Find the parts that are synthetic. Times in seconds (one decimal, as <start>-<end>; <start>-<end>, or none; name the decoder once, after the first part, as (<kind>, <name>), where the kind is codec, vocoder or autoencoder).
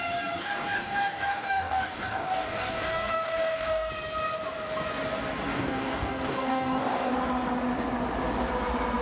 0.4-3.9 (codec, DAC); 5.5-7.1